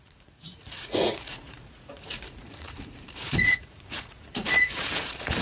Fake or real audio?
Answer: fake